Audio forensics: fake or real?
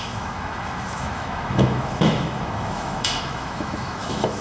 fake